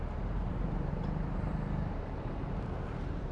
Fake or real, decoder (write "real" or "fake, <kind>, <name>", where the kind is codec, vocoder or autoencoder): fake, vocoder, BigVGAN v2